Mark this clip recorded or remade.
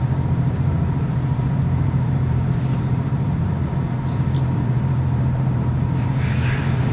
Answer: remade